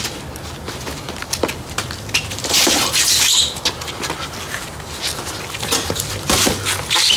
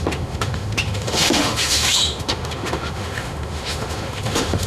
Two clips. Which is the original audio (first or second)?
first